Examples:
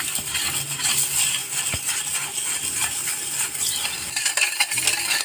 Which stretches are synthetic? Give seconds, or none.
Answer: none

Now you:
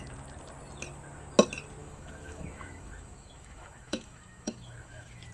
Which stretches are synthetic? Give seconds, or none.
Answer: 1.8-5.3 (autoencoder, DAC-VAE)

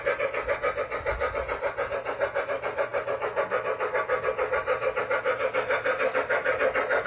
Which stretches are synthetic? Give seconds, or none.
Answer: none

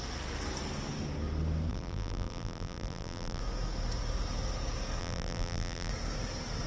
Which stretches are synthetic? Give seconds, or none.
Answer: 1.7-3.4 (vocoder, BigVGAN v2); 5.0-5.9

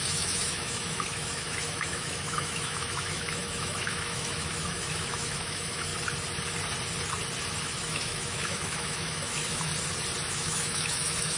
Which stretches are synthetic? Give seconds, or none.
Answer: 0.0-5.9 (autoencoder, DAC-VAE); 7.6-9.7; 10.3-11.4

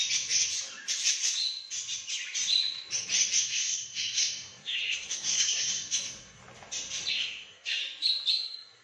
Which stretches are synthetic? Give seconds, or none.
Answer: 3.4-6.4 (codec, SNAC); 7.1-7.8; 8.3-8.8